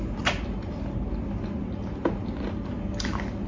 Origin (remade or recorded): recorded